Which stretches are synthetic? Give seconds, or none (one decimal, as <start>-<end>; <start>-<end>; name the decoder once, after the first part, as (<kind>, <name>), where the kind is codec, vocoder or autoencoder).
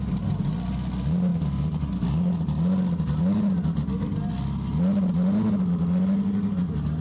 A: none